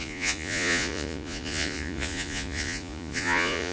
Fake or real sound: fake